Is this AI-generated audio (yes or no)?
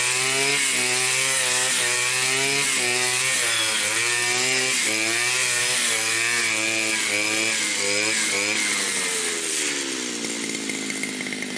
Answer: no